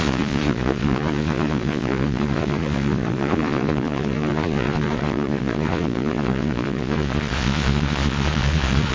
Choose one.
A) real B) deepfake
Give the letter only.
B